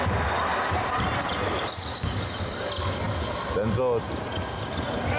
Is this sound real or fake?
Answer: real